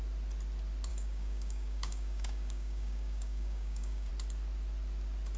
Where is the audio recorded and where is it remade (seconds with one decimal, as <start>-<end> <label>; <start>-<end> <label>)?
0.0-0.9 recorded; 0.9-4.1 remade; 4.1-5.4 recorded